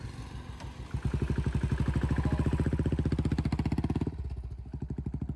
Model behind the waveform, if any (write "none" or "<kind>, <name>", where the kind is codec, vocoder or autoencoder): none